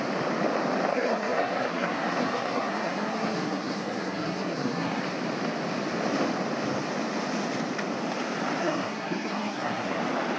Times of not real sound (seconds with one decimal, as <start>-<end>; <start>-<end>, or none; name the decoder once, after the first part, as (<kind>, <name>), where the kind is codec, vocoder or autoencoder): 0.9-5.0 (codec, SNAC); 8.6-10.0